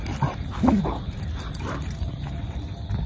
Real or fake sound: real